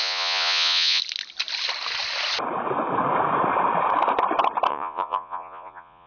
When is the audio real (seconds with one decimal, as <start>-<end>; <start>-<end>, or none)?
1.0-4.7